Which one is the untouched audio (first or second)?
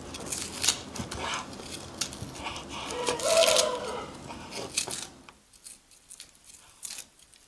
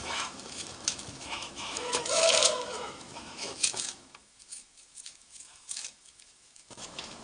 first